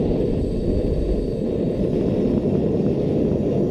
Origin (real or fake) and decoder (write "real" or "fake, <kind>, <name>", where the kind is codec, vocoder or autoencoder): real